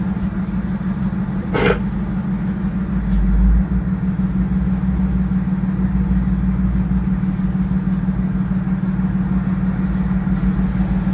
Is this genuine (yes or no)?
yes